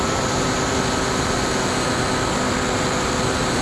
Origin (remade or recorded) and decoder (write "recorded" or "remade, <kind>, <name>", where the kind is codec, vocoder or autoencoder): recorded